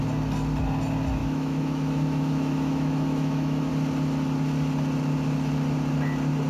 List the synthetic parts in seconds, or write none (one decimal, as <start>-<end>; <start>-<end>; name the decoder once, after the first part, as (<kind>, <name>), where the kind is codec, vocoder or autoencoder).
1.2-3.7 (autoencoder, DAC-VAE)